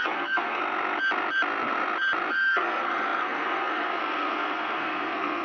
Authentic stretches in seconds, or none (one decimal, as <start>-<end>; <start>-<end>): 0.6-2.3